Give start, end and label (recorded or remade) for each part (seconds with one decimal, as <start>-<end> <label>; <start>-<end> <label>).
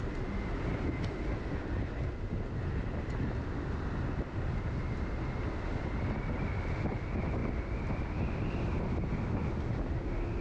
0.0-10.4 recorded